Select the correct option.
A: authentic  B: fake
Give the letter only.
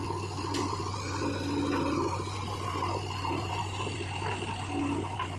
A